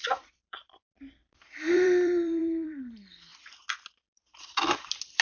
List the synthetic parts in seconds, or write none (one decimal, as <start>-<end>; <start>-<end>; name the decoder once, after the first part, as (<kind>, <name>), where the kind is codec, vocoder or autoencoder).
0.0-3.3 (vocoder, BigVGAN v2); 3.9-5.2